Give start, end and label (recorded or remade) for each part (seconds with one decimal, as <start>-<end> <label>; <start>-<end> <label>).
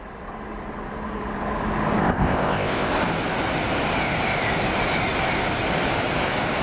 0.0-2.0 recorded; 2.0-2.9 remade; 2.9-6.6 recorded